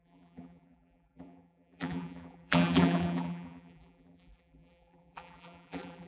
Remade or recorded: remade